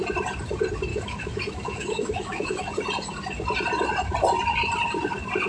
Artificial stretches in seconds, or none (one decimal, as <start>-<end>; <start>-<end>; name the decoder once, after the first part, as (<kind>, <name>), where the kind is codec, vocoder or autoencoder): 0.9-2.7 (autoencoder, DAC-VAE)